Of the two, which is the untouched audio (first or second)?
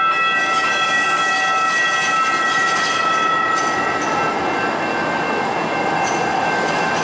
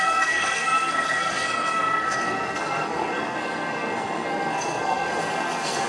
first